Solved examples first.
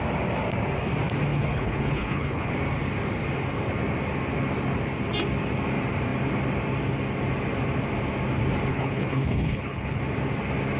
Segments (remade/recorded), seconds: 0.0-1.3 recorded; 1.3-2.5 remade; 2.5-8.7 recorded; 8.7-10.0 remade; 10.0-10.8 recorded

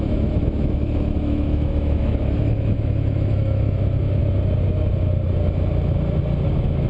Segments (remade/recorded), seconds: 0.0-4.2 remade; 4.2-6.5 recorded; 6.5-6.9 remade